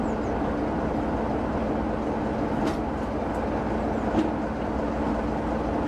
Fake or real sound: real